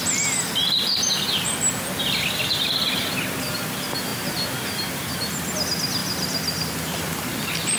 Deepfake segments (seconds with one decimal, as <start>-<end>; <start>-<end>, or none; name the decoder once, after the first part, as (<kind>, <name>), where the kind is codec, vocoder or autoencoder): 6.0-7.8 (vocoder, BigVGAN v2)